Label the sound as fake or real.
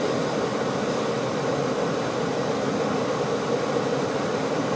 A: real